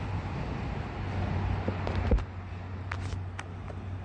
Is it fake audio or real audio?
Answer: real